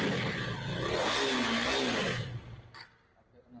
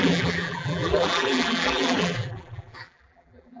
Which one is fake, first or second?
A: second